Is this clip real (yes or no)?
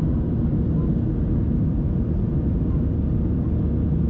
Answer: yes